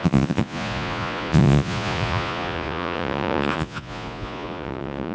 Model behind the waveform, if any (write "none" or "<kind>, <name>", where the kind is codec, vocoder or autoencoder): vocoder, Vocos